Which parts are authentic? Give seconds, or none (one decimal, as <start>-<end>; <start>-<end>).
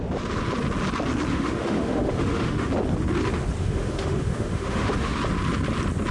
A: 0.0-1.3; 2.7-3.6; 5.2-6.1